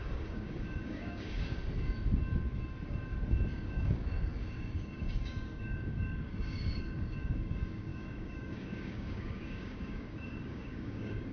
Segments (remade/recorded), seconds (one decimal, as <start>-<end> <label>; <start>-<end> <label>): 0.0-1.6 remade; 1.6-3.5 recorded; 3.5-11.3 remade